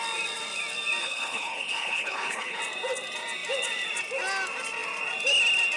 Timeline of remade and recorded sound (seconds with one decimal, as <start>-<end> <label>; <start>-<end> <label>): 0.0-1.0 recorded; 1.0-2.6 remade; 2.6-5.8 recorded